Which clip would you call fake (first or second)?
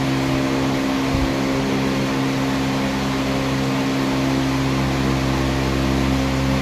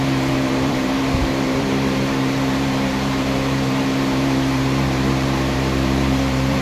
second